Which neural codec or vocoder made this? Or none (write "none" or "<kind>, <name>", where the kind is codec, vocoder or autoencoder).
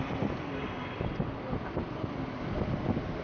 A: none